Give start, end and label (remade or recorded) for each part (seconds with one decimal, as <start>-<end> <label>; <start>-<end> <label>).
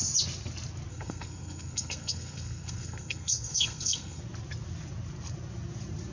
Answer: 0.0-0.9 recorded; 0.9-4.2 remade; 4.2-6.1 recorded